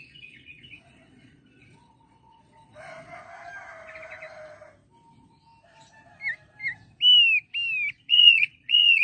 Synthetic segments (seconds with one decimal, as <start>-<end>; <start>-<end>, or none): 0.0-3.2; 8.1-9.0